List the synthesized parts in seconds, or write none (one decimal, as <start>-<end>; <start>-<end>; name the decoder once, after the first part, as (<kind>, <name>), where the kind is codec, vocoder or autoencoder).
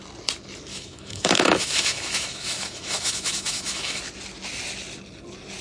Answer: 0.7-4.0 (autoencoder, DAC-VAE)